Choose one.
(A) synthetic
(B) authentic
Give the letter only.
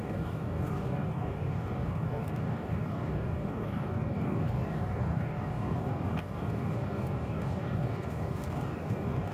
A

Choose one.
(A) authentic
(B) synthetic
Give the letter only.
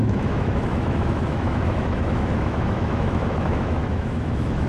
B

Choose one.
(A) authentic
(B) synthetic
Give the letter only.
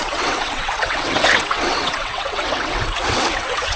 B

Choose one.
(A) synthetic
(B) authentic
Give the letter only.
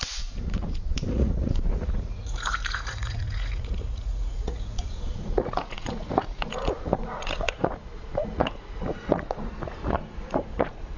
A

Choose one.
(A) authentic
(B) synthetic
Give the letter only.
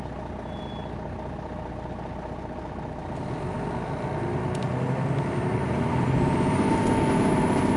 A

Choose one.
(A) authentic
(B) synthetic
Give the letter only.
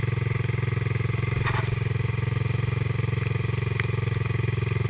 A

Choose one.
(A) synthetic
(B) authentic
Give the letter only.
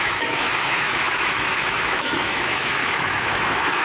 A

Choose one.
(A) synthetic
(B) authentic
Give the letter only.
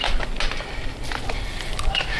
B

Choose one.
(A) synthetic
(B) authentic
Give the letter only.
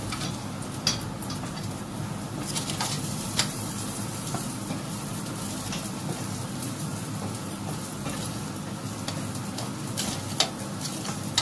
B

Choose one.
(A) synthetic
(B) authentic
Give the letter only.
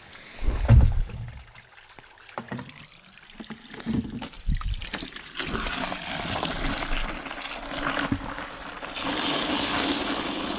B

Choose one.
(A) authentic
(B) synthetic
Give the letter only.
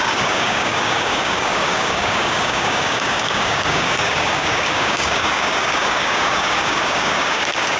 B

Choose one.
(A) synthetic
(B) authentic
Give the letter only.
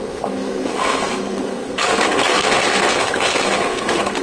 A